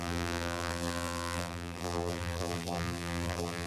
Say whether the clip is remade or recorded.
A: remade